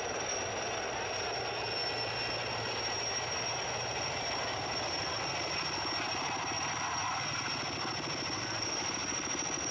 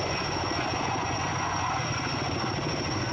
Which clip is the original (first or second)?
first